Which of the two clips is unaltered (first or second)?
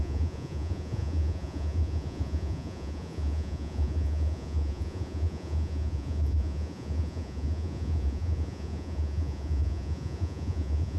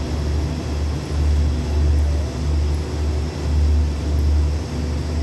second